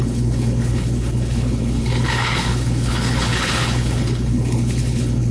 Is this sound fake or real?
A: fake